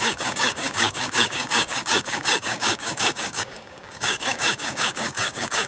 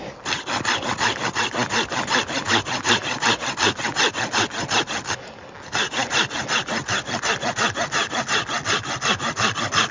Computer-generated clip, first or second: first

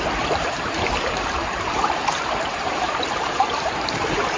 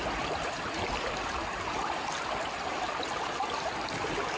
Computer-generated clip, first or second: first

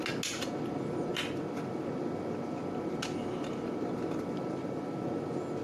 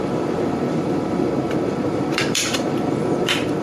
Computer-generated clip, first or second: second